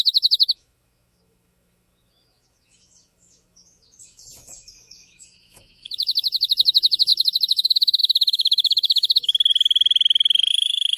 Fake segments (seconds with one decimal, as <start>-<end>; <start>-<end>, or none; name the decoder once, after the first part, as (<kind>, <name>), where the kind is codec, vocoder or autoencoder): 0.0-9.3 (autoencoder, DAC-VAE); 10.5-11.0